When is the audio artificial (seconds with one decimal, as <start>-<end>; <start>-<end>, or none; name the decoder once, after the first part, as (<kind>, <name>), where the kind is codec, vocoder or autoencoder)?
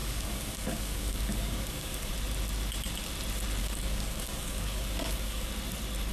0.0-2.1 (codec, DAC); 3.6-5.5